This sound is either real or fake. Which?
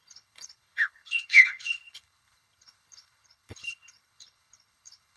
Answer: fake